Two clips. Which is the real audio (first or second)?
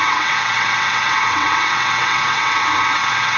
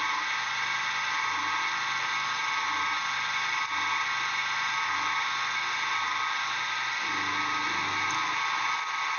second